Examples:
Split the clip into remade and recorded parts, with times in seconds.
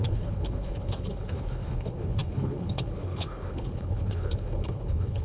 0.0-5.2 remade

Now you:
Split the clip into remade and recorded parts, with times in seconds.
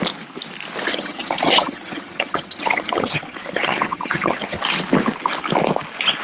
0.0-0.9 recorded; 0.9-4.6 remade; 4.6-6.2 recorded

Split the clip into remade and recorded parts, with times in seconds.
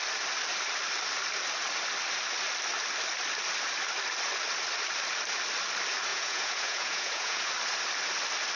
0.0-6.1 recorded; 6.1-7.5 remade; 7.5-8.6 recorded